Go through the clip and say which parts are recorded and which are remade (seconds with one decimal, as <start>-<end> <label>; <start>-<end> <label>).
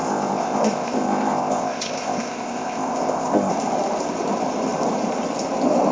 0.0-3.5 remade; 3.5-5.9 recorded